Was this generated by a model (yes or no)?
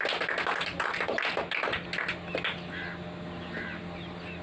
no